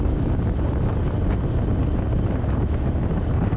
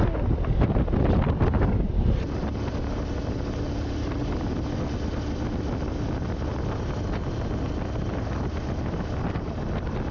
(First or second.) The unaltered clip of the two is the second